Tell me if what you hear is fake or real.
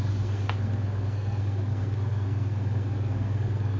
fake